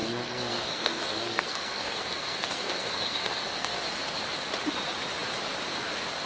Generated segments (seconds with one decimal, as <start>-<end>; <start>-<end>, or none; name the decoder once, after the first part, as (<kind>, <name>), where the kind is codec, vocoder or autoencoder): 0.0-3.8 (codec, SNAC)